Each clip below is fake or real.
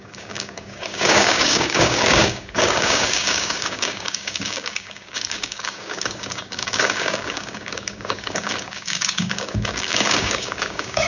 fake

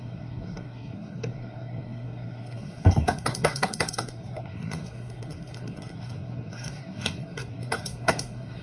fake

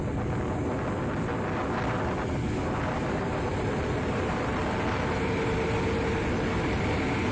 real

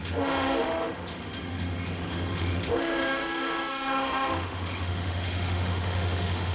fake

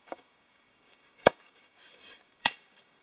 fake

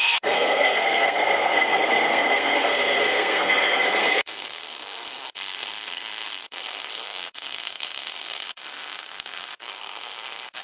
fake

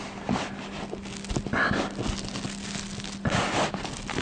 real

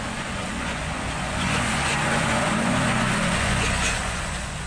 fake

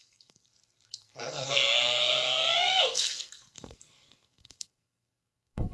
fake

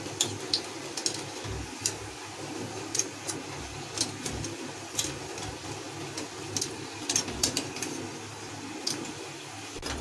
real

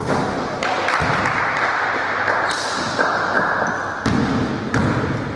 real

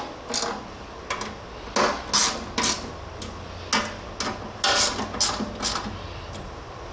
real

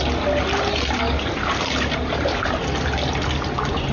real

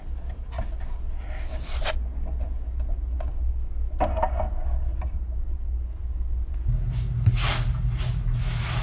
real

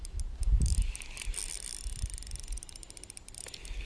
real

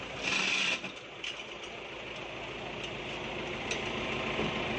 real